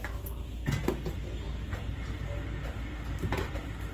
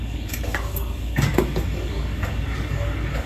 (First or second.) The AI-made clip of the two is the second